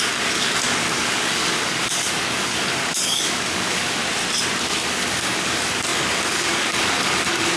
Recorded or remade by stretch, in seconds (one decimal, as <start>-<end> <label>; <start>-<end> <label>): 0.0-4.0 remade; 4.0-4.6 recorded; 4.6-7.6 remade